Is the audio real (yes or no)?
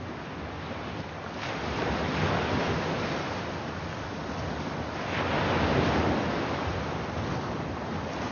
yes